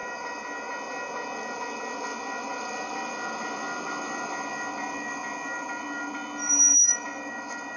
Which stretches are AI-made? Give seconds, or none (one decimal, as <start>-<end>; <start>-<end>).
none